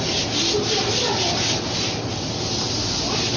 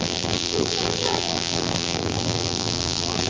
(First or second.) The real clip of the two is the first